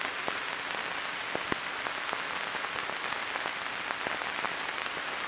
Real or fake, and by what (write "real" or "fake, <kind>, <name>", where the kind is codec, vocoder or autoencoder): real